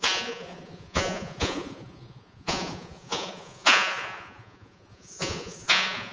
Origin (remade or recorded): remade